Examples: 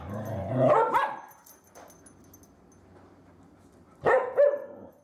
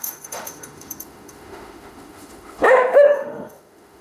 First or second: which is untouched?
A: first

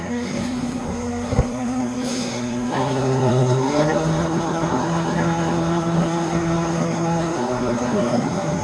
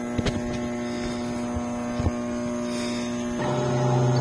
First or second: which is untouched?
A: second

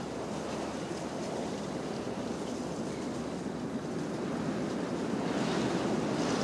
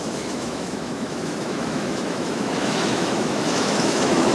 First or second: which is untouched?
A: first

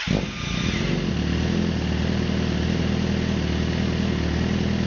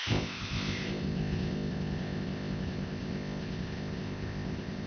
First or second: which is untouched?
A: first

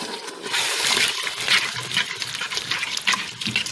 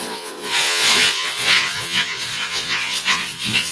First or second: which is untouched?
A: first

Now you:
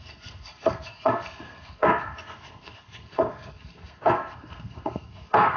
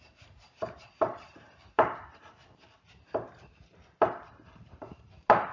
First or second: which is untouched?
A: second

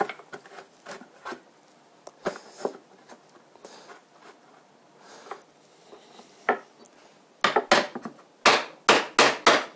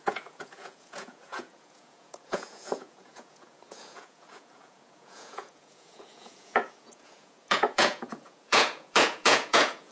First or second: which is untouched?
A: first